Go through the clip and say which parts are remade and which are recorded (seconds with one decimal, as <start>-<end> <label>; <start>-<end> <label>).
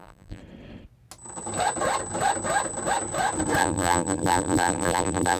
0.0-0.4 remade; 0.4-3.6 recorded; 3.6-5.4 remade